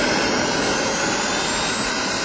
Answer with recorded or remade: recorded